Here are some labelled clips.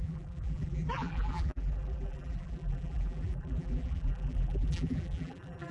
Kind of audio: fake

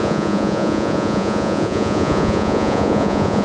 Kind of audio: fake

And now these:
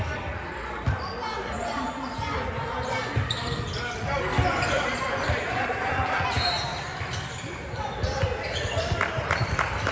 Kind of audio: real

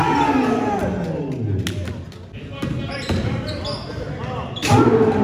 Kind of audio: real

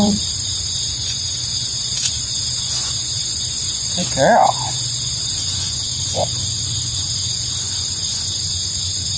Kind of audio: fake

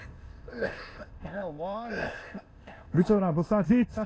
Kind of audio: fake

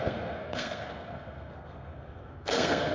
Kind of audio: fake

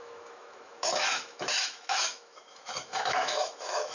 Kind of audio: fake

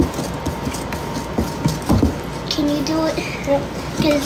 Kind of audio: real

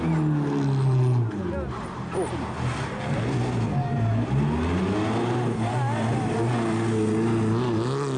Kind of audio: real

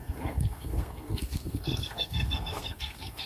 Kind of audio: fake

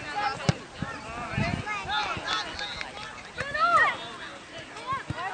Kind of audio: real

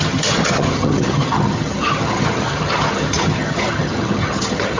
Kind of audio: fake